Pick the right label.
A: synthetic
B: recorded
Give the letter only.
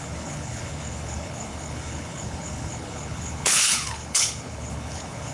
A